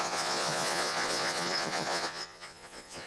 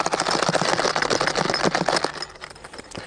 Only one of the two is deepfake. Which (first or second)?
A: first